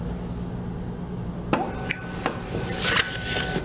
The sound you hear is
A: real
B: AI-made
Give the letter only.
A